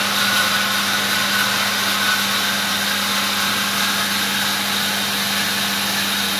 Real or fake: real